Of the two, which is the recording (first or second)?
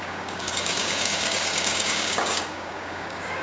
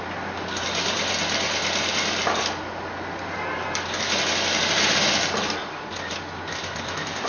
second